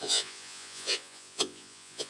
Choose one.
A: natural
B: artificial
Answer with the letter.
B